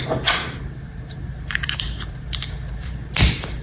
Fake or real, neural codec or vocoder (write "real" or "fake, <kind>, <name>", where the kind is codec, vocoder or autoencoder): fake, vocoder, BigVGAN v2